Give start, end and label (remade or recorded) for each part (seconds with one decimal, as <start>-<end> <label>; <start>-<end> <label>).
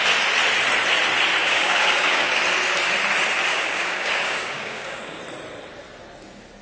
0.0-1.4 recorded; 1.4-2.3 remade; 2.3-3.5 recorded; 3.5-5.2 remade; 5.2-6.6 recorded